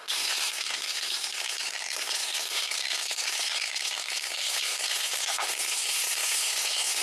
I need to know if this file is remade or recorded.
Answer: remade